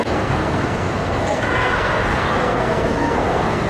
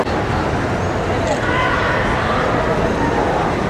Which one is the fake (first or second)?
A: first